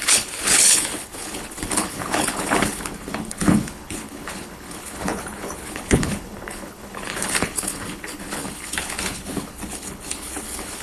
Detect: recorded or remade remade